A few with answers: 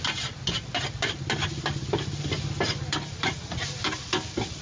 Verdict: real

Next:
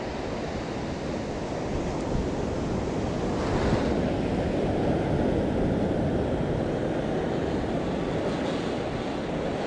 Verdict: real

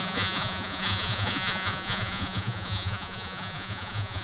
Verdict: fake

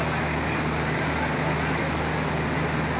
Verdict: real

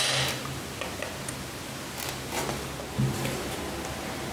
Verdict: real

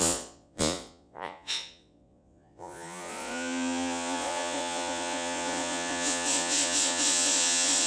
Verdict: fake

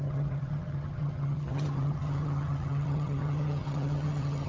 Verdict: fake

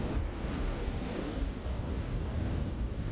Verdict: fake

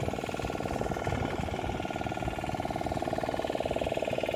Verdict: real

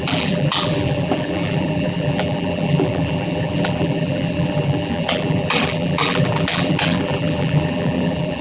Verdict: fake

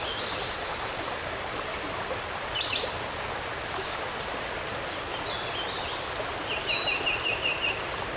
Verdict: real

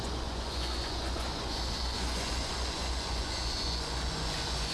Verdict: fake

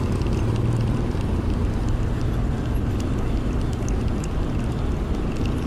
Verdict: real